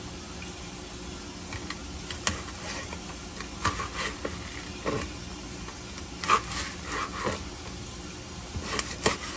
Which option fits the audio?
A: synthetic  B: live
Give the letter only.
B